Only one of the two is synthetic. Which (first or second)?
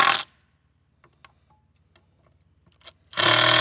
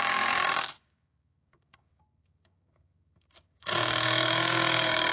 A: second